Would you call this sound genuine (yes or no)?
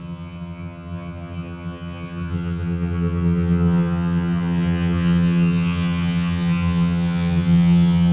no